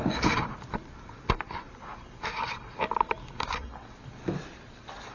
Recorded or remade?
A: remade